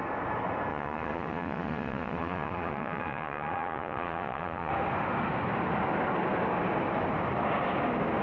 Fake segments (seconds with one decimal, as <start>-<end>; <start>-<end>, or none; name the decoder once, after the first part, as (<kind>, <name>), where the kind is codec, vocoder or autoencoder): 0.7-4.7 (vocoder, Vocos)